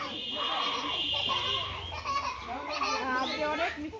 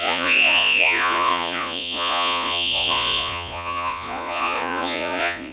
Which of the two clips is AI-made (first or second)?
second